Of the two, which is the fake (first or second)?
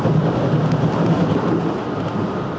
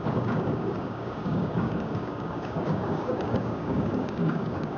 second